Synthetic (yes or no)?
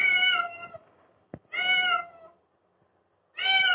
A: no